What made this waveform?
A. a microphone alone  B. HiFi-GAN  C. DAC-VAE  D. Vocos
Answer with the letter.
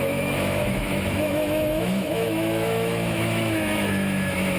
C